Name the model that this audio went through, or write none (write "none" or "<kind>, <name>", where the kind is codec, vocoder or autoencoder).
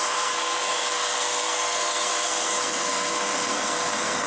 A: codec, SNAC